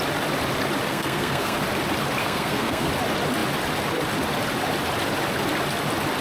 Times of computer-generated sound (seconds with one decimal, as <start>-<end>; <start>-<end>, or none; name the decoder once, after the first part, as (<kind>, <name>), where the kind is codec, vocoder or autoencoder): 0.9-1.6 (codec, SNAC); 2.2-2.9